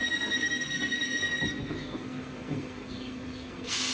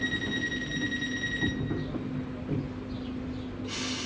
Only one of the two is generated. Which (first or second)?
first